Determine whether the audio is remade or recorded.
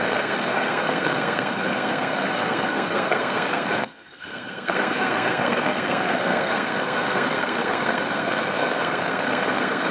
remade